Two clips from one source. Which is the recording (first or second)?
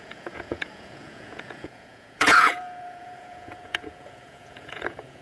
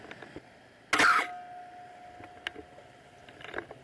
second